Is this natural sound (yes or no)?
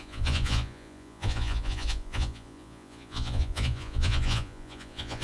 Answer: no